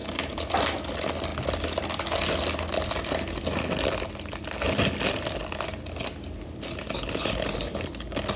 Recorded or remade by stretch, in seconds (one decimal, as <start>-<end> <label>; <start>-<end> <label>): 0.0-0.9 remade; 0.9-8.4 recorded